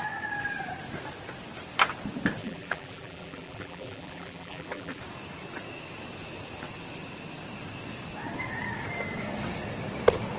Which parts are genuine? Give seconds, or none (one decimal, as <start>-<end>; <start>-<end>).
0.0-2.4; 5.0-10.4